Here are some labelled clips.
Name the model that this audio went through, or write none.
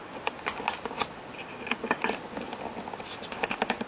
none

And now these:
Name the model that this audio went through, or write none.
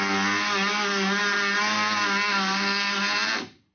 none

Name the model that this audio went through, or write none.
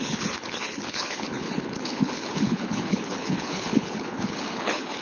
codec, HILCodec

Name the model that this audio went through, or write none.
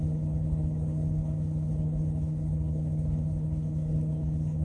codec, HILCodec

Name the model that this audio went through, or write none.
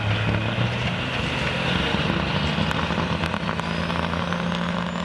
none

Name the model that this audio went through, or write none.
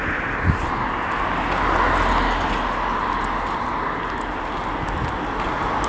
none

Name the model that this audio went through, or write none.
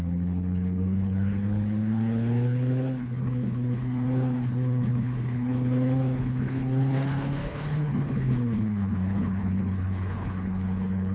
codec, HILCodec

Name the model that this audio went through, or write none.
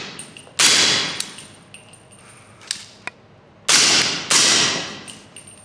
none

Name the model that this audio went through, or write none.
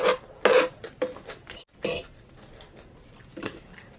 none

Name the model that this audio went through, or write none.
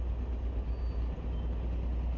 none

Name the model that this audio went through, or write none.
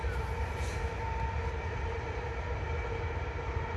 none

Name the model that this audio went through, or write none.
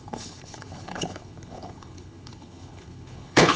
codec, HILCodec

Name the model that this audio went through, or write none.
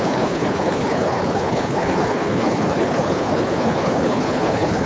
codec, HILCodec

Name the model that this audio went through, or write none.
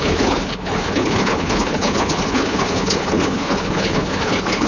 codec, HILCodec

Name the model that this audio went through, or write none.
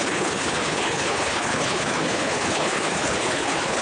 codec, HILCodec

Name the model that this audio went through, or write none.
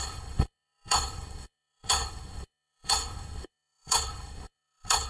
codec, HILCodec